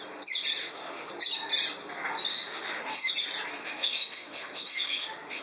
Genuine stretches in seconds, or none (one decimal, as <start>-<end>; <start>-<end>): 0.0-0.6; 1.1-2.3; 3.1-3.6